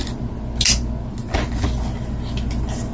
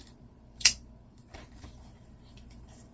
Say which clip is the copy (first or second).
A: second